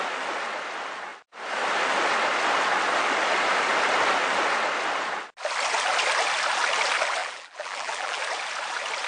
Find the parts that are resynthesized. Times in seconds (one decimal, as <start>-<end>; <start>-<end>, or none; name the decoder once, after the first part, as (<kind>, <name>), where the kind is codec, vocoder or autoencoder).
7.2-8.2 (vocoder, BigVGAN v2)